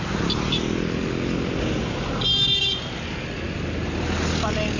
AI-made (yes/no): no